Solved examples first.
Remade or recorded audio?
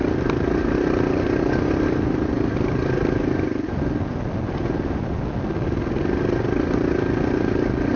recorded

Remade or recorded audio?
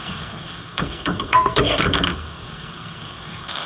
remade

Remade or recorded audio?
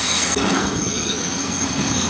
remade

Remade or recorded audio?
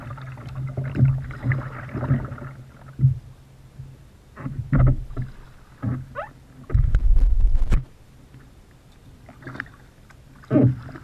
recorded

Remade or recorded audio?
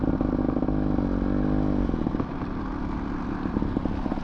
recorded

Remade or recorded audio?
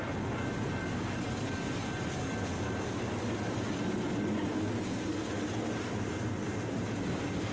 recorded